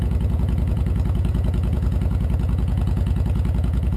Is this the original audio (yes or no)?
no